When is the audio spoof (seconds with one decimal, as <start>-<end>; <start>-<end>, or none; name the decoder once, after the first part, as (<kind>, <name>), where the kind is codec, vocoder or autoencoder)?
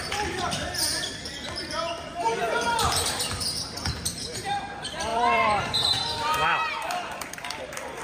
0.0-8.0 (vocoder, BigVGAN v2)